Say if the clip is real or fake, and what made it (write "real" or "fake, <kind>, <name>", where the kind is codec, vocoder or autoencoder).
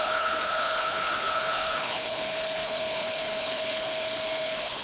fake, codec, HILCodec